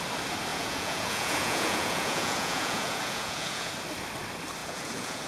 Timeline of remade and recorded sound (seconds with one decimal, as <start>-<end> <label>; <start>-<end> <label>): 0.0-0.5 recorded; 0.5-3.7 remade; 3.7-4.6 recorded; 4.6-5.3 remade